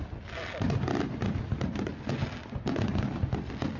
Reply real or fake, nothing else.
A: real